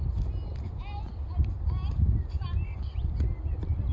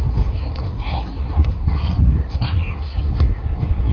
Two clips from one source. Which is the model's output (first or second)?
second